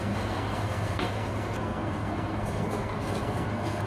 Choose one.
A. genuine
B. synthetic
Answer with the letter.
B